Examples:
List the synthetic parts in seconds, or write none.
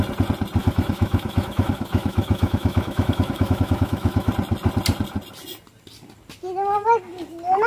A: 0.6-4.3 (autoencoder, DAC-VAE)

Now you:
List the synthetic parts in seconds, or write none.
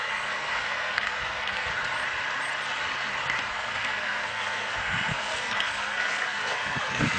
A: 0.0-1.7 (codec, SNAC); 3.5-7.2